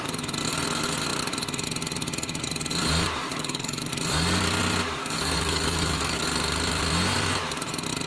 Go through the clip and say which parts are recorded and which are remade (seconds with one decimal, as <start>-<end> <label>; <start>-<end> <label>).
0.0-3.2 recorded; 3.2-3.9 remade; 3.9-5.0 recorded; 5.0-6.2 remade; 6.2-8.1 recorded